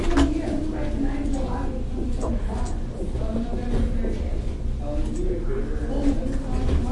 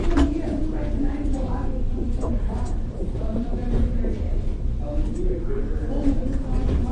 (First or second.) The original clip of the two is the first